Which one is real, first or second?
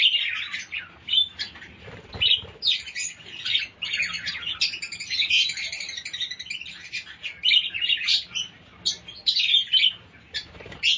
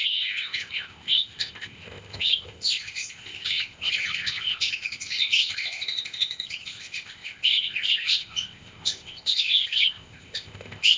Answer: first